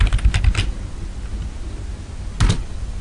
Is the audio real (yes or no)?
yes